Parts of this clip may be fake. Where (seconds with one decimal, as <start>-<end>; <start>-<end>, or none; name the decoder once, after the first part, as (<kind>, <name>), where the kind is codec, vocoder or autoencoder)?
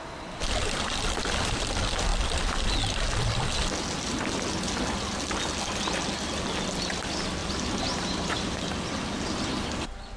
7.4-8.7 (vocoder, BigVGAN v2)